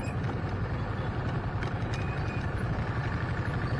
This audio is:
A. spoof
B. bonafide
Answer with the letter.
B